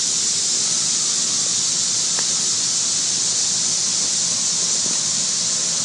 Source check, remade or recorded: recorded